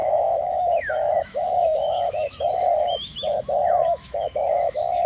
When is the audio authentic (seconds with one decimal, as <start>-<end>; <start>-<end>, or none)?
none